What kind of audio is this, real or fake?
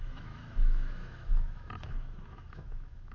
fake